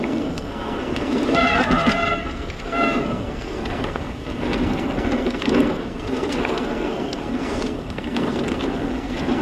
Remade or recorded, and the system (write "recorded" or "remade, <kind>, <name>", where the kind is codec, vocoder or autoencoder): remade, codec, SNAC